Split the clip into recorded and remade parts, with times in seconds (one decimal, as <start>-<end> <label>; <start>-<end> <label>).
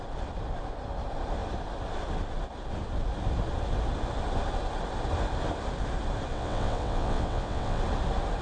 0.0-6.3 recorded; 6.3-7.8 remade; 7.8-8.4 recorded